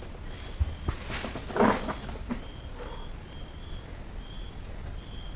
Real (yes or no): yes